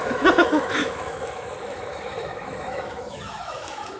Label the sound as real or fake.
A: fake